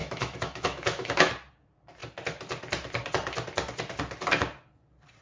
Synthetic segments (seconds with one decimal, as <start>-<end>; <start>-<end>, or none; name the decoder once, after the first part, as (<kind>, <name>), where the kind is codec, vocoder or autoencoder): 0.0-1.3 (autoencoder, DAC-VAE)